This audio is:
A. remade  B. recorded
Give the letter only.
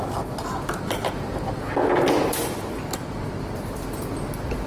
B